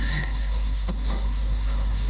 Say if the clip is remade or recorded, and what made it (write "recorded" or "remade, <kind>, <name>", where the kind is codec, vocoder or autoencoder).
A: remade, codec, SNAC